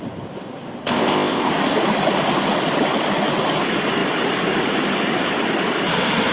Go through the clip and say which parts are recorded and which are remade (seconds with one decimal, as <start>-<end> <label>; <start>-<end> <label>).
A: 0.0-0.8 recorded; 0.8-1.5 remade; 1.5-6.3 recorded